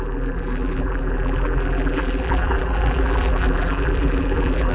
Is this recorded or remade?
remade